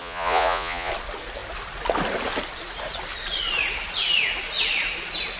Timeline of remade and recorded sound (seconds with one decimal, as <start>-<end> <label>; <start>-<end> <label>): 0.0-0.9 remade; 0.9-5.4 recorded